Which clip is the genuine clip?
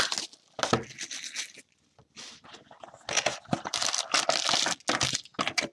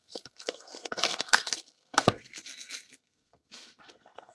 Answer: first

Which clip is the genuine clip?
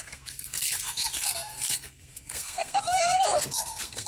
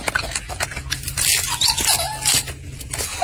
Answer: second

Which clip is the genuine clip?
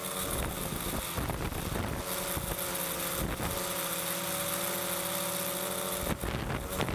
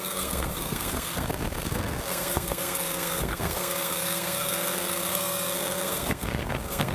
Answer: first